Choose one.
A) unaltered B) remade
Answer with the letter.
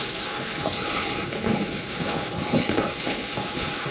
B